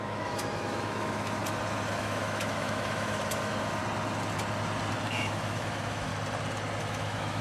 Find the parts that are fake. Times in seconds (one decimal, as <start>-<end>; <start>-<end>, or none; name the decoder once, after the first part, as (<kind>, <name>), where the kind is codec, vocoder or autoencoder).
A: 0.0-1.4 (autoencoder, DAC-VAE); 1.9-3.8; 5.1-6.1; 6.8-7.4